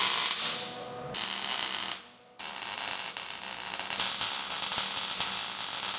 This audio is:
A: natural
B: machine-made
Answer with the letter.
A